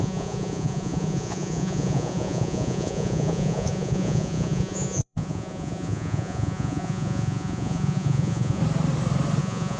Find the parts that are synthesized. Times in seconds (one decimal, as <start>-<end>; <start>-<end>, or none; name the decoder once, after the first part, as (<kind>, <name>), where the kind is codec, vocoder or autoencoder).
0.0-8.6 (vocoder, Vocos); 9.4-9.8